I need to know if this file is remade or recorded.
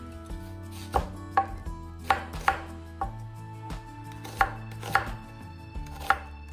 recorded